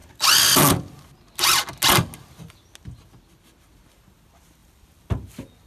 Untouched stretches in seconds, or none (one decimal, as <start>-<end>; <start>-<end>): 0.0-4.6; 5.3-5.7